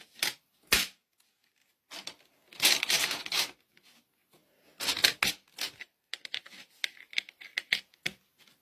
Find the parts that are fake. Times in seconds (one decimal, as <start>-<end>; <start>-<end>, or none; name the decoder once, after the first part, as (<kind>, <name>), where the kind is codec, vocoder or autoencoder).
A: none